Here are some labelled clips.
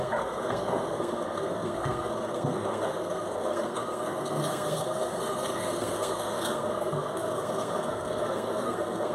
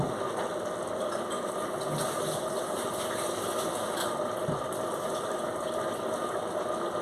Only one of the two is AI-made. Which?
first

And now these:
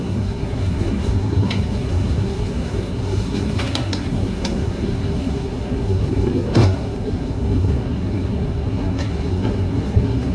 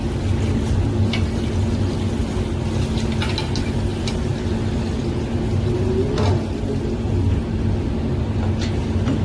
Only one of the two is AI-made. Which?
first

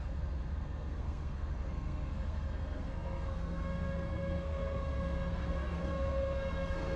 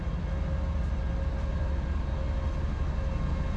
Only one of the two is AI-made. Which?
first